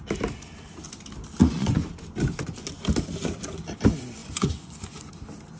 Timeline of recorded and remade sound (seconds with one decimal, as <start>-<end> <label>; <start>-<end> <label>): 0.0-1.4 recorded; 1.4-1.9 remade; 1.9-4.2 recorded; 4.2-5.1 remade; 5.1-5.6 recorded